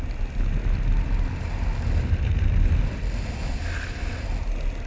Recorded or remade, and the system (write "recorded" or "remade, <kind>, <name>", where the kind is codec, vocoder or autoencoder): recorded